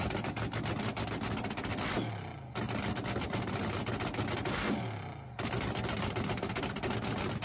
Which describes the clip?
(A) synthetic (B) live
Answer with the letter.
B